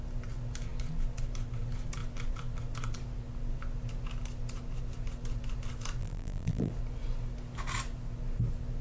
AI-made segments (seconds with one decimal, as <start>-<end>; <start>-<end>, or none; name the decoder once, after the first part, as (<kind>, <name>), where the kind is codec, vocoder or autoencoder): 6.0-6.7 (vocoder, BigVGAN v2)